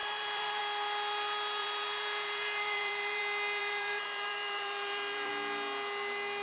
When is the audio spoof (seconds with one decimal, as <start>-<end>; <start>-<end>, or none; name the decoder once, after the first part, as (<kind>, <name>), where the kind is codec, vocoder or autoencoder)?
0.0-0.6 (vocoder, BigVGAN v2); 1.6-3.2; 3.6-5.3